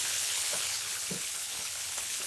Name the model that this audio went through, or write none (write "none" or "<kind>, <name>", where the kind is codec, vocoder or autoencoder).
codec, HILCodec